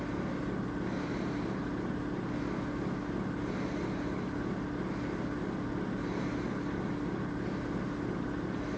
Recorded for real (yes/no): yes